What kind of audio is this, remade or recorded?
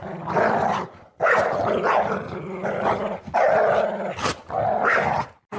recorded